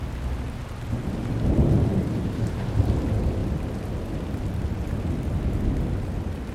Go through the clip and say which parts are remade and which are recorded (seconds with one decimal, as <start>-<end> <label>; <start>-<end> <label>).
0.0-6.5 recorded